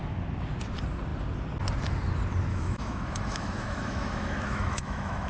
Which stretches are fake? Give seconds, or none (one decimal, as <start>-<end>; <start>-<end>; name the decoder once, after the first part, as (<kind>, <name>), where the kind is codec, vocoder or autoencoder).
2.5-5.3 (autoencoder, DAC-VAE)